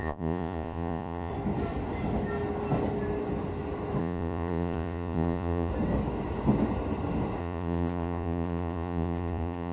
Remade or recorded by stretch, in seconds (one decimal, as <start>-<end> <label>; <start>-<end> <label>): 0.0-1.3 remade; 1.3-4.0 recorded; 4.0-5.7 remade; 5.7-7.4 recorded; 7.4-9.7 remade